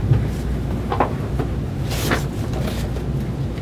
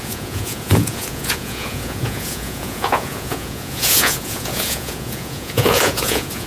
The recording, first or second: first